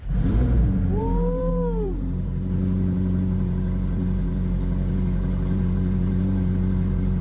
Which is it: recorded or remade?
remade